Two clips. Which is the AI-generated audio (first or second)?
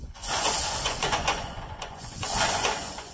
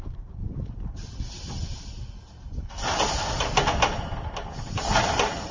first